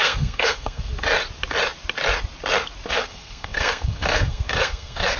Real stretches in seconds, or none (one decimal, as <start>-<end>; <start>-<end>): 0.9-2.9